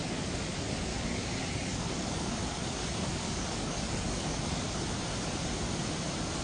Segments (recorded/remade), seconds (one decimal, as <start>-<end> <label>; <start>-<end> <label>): 0.0-0.5 remade; 0.5-0.9 recorded; 0.9-4.7 remade; 4.7-6.4 recorded

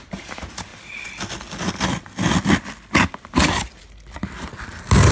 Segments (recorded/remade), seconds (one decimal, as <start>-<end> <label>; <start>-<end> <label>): 0.0-5.1 recorded

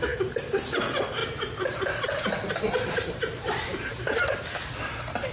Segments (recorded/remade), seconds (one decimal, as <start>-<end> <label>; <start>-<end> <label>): 0.0-1.2 recorded; 1.2-4.4 remade; 4.4-5.3 recorded

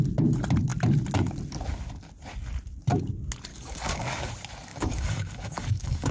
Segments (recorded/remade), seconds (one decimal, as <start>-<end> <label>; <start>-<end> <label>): 0.0-3.5 recorded; 3.5-4.3 remade; 4.3-4.7 recorded; 4.7-6.1 remade

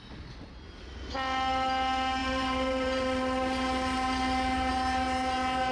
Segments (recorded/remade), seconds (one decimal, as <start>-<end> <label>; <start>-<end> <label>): 0.0-2.2 recorded; 2.2-4.7 remade; 4.7-5.7 recorded